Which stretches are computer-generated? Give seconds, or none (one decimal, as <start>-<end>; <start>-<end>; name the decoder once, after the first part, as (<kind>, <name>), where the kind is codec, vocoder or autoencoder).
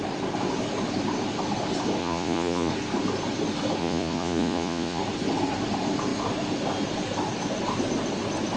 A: 2.0-2.7 (vocoder, Vocos); 3.8-5.0